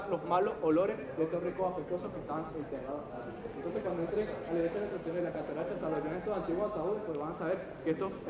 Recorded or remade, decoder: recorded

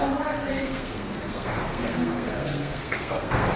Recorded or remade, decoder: remade, codec, SNAC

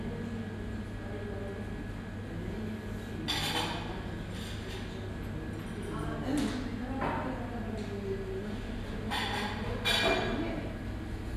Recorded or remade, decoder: recorded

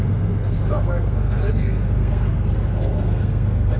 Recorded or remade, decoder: remade, codec, SNAC